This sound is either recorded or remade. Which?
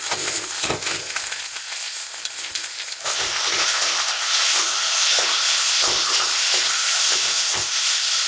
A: remade